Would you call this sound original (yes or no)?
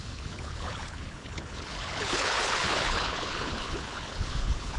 no